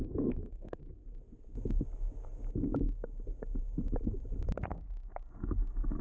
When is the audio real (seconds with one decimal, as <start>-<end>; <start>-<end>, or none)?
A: 0.8-6.0